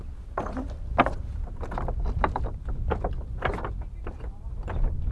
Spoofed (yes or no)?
no